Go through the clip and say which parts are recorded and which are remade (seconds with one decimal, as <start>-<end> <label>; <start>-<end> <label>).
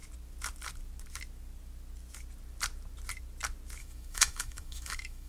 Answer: 0.0-3.8 recorded; 3.8-5.3 remade